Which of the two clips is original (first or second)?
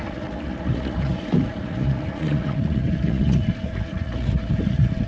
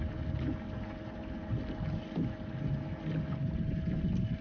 second